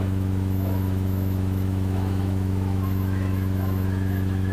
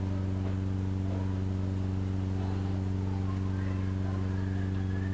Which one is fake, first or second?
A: first